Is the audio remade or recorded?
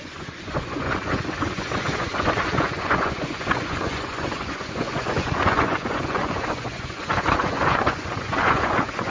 remade